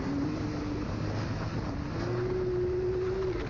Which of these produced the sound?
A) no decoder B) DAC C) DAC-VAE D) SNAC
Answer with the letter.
A